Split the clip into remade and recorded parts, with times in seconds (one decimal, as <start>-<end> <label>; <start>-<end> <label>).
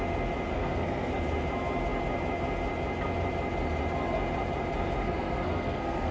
0.0-0.5 recorded; 0.5-1.1 remade; 1.1-5.0 recorded; 5.0-6.1 remade